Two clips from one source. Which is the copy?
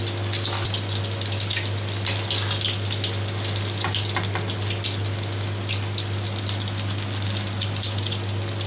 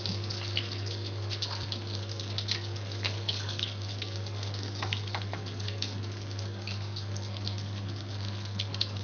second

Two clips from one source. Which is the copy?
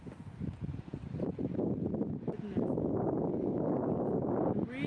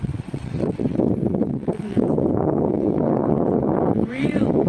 second